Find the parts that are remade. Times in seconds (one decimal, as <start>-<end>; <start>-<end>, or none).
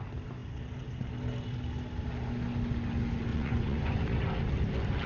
3.3-4.0